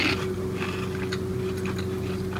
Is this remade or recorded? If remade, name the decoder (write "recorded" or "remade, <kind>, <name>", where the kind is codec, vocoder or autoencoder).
recorded